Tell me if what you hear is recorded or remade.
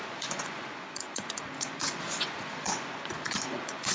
remade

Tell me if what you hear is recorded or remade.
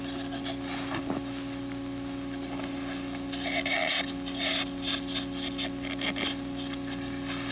recorded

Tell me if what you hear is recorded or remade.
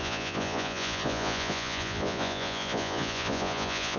remade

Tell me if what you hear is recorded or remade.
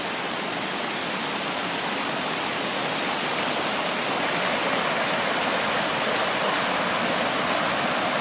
recorded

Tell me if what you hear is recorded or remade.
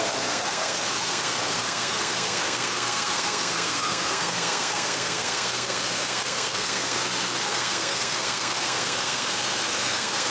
remade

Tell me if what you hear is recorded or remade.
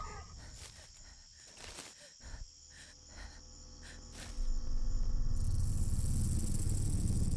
recorded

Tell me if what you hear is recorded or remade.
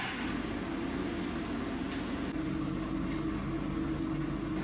recorded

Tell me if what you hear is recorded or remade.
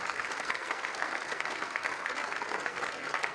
remade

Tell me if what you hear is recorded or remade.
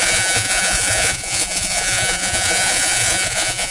remade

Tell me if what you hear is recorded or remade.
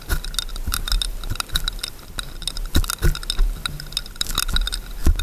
recorded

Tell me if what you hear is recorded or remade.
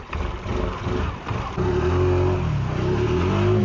recorded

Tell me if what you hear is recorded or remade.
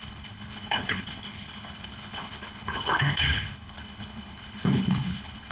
remade